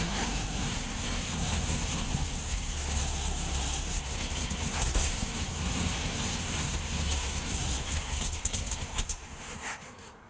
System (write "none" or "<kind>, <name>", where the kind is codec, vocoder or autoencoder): codec, SNAC